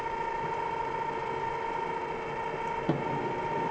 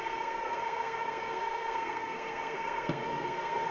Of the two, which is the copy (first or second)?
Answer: second